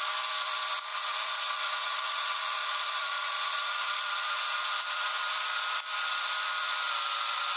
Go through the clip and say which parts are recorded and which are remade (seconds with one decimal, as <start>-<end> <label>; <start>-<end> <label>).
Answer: 0.0-0.9 recorded; 0.9-5.2 remade; 5.2-7.6 recorded